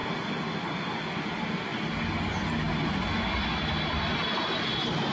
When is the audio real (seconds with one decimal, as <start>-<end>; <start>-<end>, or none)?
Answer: 0.0-5.1